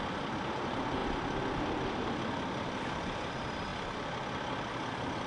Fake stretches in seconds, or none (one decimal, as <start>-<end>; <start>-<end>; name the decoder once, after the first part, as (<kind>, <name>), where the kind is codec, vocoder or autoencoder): 0.0-1.0 (vocoder, BigVGAN v2); 3.0-3.7; 4.7-5.3

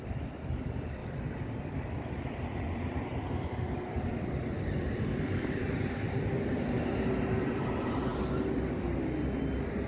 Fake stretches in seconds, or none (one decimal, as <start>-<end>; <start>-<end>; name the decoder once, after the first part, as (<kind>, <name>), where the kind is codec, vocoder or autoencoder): 0.0-8.1 (vocoder, BigVGAN v2)

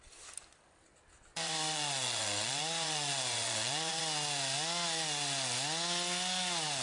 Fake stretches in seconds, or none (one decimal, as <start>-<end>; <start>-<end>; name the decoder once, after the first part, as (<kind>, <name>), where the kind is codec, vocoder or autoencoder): 1.3-4.0 (vocoder, Vocos)

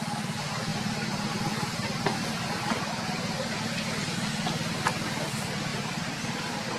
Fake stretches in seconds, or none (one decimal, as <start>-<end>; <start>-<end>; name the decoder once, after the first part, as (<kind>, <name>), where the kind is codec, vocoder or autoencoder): 5.7-6.8 (vocoder, BigVGAN v2)

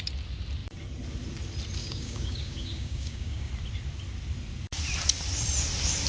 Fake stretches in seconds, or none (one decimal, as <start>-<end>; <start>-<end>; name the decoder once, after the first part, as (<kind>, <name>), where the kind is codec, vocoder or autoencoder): 1.8-3.5 (codec, DAC)

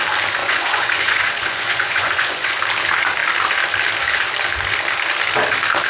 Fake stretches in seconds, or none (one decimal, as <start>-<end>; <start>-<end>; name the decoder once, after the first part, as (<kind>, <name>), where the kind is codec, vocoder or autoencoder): 0.4-2.6 (vocoder, Vocos)

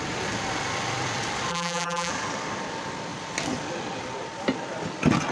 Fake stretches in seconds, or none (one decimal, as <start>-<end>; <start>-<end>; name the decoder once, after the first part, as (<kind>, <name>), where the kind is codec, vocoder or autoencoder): 1.5-2.1 (vocoder, BigVGAN v2)

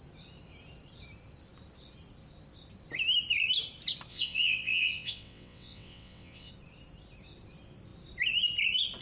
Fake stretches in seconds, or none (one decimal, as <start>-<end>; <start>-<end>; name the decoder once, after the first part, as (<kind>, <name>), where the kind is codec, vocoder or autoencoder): 4.1-6.5 (vocoder, WaveNeXt)